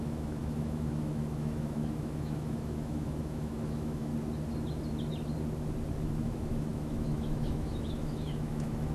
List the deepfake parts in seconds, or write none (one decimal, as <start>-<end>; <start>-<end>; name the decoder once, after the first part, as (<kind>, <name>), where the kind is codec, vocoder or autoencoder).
0.0-4.1 (autoencoder, DAC-VAE); 6.0-8.9